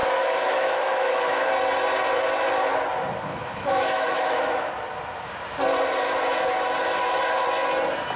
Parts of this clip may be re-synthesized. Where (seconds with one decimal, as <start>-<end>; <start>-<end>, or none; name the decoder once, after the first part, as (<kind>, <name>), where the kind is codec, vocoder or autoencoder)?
0.0-1.5 (autoencoder, DAC-VAE); 3.3-4.7